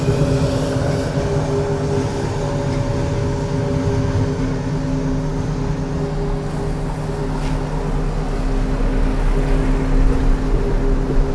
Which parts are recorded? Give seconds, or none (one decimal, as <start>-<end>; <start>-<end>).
0.0-11.3